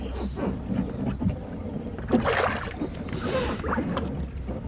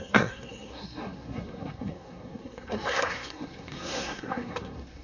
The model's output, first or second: second